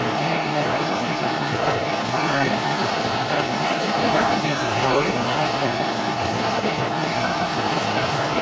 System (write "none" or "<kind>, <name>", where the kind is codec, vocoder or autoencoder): codec, SNAC